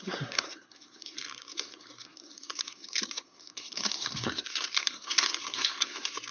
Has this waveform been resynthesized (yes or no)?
yes